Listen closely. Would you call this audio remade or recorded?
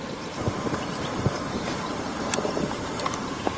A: remade